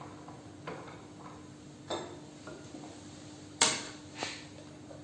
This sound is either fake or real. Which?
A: real